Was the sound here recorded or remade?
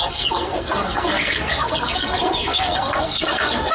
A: remade